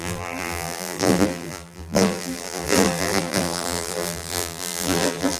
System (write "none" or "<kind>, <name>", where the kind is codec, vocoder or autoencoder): vocoder, BigVGAN v2